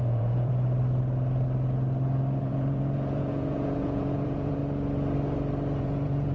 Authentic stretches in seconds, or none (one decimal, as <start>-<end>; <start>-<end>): 0.5-2.4; 4.6-5.8